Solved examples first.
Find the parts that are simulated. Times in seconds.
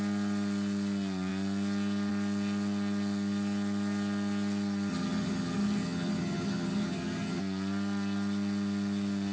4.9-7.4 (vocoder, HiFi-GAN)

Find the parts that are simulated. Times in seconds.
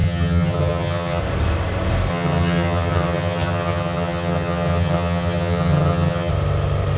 0.0-1.2 (vocoder, HiFi-GAN); 2.1-6.3